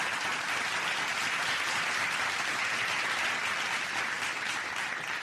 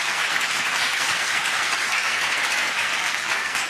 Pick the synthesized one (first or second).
second